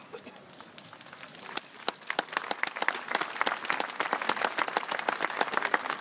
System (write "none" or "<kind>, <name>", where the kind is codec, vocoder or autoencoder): none